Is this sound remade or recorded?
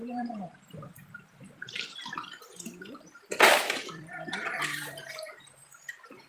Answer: remade